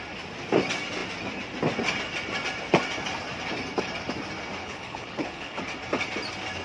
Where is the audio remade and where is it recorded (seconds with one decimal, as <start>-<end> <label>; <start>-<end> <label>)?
0.0-4.6 recorded; 4.6-5.6 remade; 5.6-6.6 recorded